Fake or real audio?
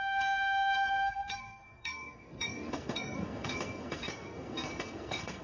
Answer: fake